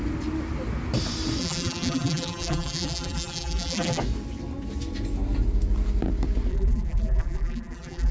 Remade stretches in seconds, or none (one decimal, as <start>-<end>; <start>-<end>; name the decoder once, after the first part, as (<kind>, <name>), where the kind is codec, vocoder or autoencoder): 1.4-4.0 (vocoder, BigVGAN v2); 6.5-8.1